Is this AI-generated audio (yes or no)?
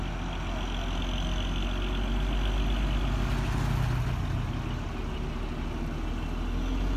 no